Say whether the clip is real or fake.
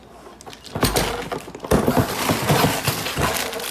real